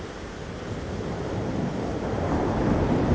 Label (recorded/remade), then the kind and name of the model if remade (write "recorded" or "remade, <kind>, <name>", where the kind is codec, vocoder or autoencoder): recorded